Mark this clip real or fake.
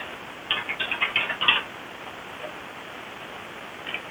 real